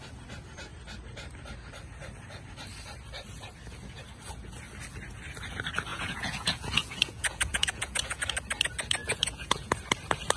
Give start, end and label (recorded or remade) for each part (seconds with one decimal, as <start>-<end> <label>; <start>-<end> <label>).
0.0-5.9 recorded; 5.9-8.2 remade; 8.2-9.0 recorded; 9.0-9.7 remade; 9.7-10.4 recorded